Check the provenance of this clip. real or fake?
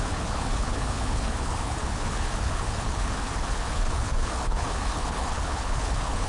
fake